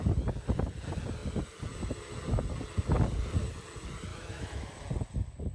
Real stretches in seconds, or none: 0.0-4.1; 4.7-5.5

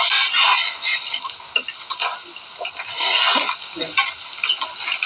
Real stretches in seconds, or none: 0.0-5.1